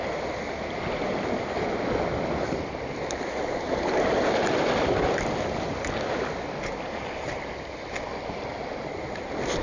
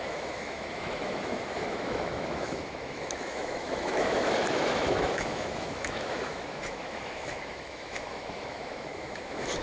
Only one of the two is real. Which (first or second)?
first